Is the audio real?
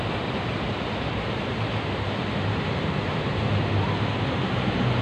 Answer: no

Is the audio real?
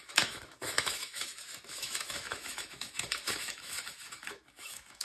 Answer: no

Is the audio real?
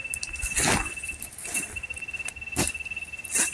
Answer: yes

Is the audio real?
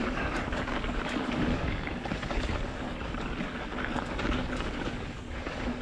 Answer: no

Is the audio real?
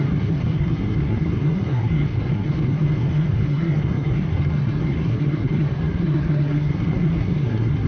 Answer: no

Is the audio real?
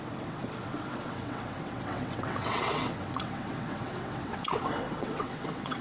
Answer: no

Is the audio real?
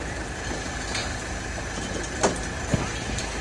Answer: yes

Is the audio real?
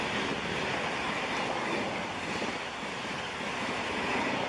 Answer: yes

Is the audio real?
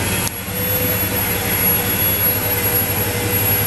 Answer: yes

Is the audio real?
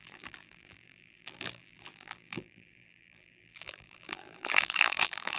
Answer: no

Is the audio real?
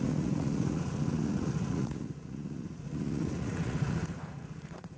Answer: no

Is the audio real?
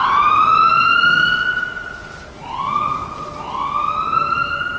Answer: yes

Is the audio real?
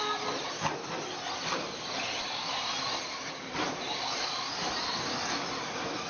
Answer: yes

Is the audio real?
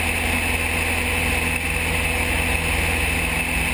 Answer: yes